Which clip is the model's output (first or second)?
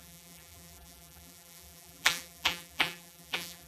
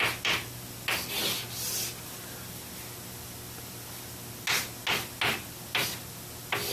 first